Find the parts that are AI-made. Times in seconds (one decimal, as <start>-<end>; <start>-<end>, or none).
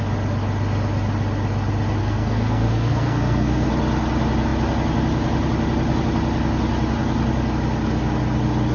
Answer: 2.0-3.7